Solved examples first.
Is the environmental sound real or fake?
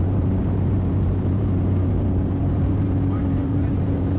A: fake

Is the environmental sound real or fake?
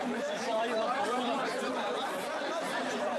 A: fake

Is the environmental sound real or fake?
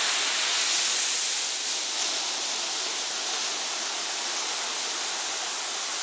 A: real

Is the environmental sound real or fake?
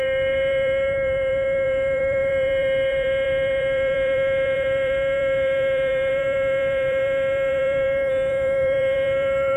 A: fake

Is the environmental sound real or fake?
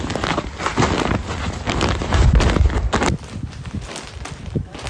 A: real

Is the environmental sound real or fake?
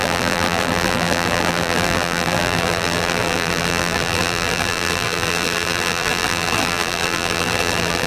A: fake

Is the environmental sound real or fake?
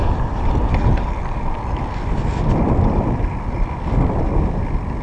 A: real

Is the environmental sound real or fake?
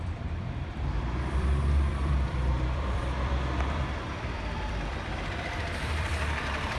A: fake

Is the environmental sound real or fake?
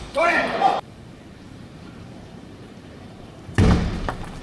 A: fake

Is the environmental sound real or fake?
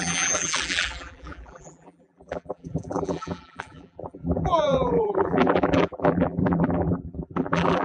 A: fake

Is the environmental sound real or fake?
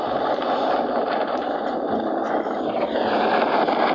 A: fake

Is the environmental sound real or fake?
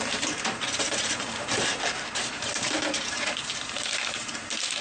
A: fake